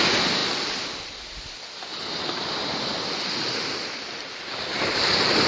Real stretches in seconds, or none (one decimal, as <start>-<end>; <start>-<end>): 0.0-5.5

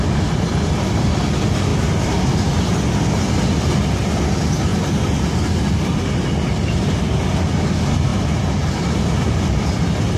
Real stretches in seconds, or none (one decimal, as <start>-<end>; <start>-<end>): 0.0-8.1; 8.7-10.2

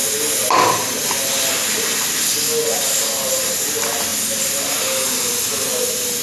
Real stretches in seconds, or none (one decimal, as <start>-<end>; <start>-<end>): 0.0-6.2

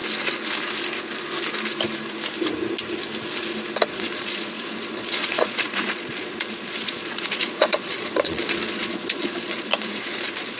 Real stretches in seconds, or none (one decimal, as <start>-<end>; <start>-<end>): 0.0-3.9